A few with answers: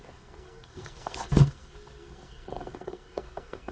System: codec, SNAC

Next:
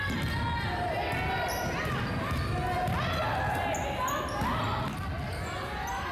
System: none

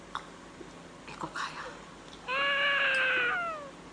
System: none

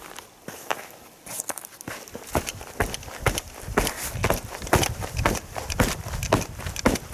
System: none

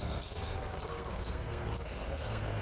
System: codec, SNAC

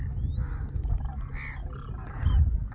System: none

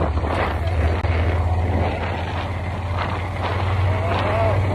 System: none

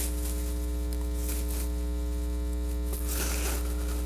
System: none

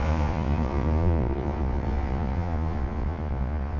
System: vocoder, Vocos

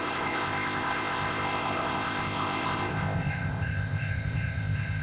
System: codec, ZipCodec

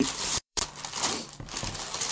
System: vocoder, BigVGAN v2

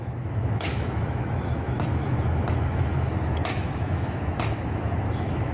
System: autoencoder, DAC-VAE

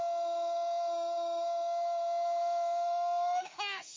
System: autoencoder, DAC-VAE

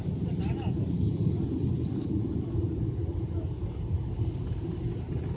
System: none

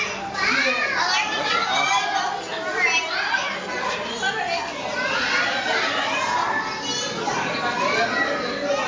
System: none